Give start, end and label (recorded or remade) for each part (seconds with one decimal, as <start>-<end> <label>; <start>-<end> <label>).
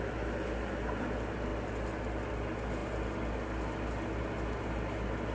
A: 0.0-5.3 recorded